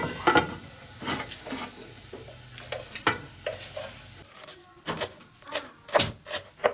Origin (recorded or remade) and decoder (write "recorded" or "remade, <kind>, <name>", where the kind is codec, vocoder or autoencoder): recorded